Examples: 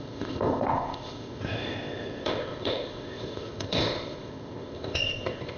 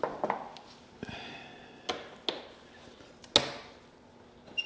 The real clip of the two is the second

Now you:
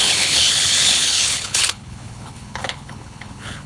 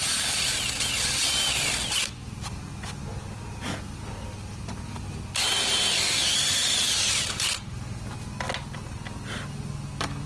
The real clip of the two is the second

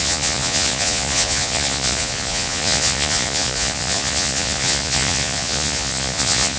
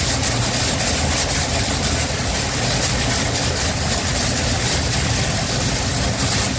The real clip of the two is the second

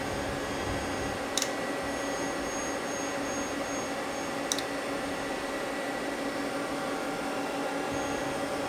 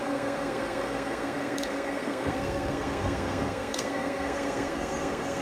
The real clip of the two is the first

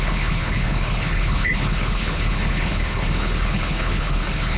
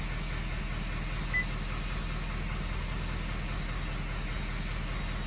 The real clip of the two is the second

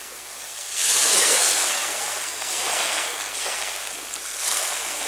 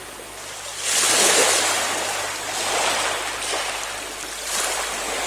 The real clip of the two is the second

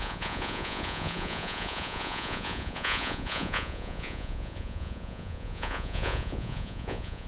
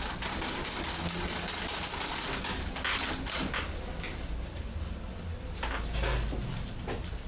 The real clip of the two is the second